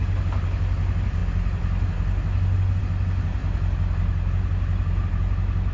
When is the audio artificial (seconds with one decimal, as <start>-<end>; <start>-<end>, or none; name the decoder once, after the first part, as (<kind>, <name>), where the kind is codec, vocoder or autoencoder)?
none

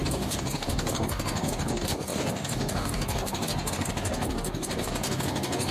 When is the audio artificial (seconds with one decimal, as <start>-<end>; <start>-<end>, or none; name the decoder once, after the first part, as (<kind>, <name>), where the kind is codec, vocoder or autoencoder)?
0.0-5.7 (codec, DAC)

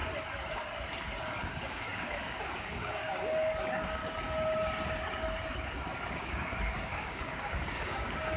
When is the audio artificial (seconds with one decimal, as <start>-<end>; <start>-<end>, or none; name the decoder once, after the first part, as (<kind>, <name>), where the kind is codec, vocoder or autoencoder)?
1.4-4.0 (codec, DAC); 6.1-8.4

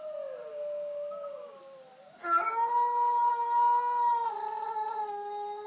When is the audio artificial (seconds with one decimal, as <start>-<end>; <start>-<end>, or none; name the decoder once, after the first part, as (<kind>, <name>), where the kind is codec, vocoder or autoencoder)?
0.5-1.6 (codec, DAC)

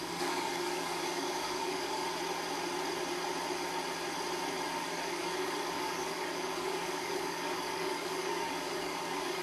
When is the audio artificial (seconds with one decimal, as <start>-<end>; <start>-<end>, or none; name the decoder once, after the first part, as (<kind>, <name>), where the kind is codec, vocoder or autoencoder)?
0.0-2.0 (codec, DAC); 4.8-9.4

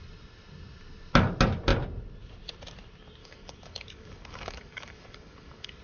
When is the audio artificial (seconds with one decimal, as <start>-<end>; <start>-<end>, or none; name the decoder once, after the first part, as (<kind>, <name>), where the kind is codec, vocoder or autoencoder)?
3.2-5.8 (codec, DAC)

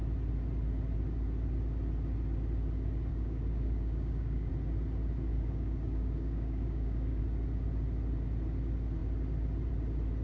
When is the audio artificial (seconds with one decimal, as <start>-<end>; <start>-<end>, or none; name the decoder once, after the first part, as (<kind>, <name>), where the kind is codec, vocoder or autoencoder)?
3.1-4.5 (codec, DAC); 5.3-7.2

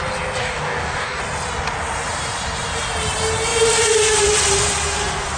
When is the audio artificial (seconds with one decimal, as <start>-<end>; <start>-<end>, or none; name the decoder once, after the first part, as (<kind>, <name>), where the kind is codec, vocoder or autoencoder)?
0.4-1.2 (codec, DAC)